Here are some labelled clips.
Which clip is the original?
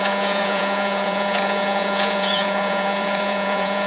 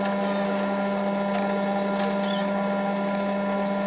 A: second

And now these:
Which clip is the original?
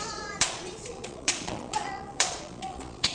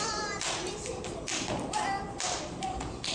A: second